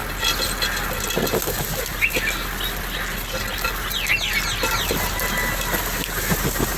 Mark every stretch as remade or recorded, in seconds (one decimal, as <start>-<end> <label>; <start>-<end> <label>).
0.0-6.8 recorded